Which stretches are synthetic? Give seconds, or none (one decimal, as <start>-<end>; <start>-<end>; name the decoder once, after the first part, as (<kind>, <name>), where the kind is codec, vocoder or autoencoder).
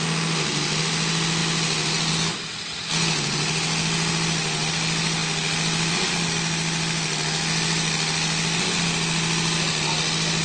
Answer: none